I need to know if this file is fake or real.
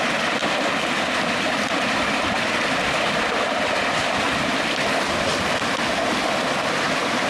real